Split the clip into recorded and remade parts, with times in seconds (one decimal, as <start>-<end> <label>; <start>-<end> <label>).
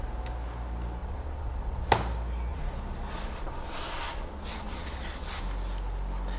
0.0-1.0 recorded; 1.0-1.9 remade; 1.9-2.5 recorded; 2.5-5.4 remade; 5.4-6.4 recorded